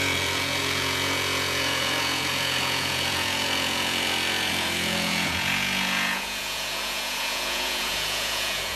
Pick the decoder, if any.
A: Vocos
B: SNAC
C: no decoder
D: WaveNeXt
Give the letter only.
A